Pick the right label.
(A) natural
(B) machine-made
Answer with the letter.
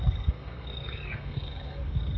B